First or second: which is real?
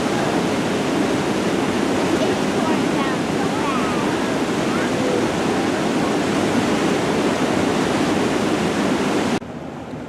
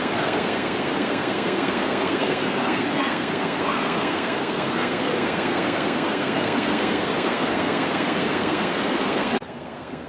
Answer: first